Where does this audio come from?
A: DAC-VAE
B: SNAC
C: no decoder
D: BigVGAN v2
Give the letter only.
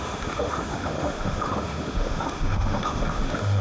A